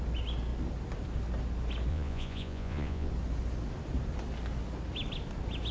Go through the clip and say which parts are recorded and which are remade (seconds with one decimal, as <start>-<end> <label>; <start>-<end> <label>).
0.0-1.9 recorded; 1.9-3.1 remade; 3.1-5.7 recorded